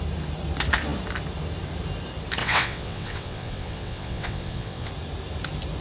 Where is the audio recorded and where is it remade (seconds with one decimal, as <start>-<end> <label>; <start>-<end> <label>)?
0.0-2.4 recorded; 2.4-4.9 remade; 4.9-5.8 recorded